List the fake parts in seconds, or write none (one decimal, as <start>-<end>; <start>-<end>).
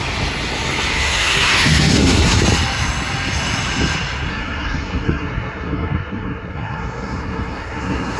0.9-2.4; 4.3-8.2